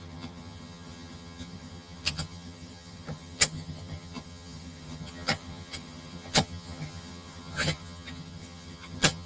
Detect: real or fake fake